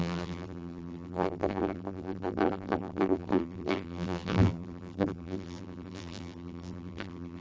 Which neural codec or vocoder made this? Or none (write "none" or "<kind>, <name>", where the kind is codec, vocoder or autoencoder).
vocoder, BigVGAN v2